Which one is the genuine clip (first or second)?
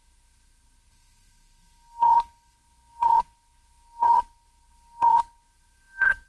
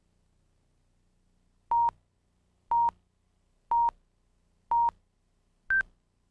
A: second